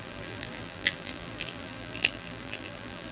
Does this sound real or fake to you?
fake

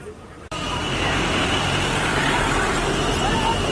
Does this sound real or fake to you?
fake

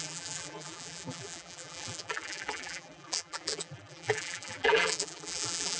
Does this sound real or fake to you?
fake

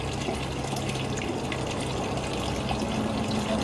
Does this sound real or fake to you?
real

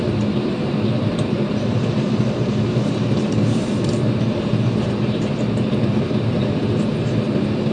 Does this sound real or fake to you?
fake